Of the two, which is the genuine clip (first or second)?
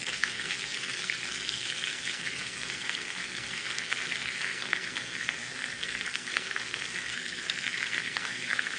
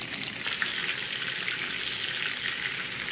second